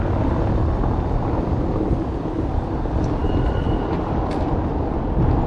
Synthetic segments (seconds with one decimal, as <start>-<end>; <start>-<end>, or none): none